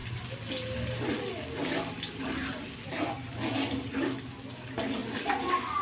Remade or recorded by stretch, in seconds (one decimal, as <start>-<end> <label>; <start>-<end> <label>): 0.0-5.8 remade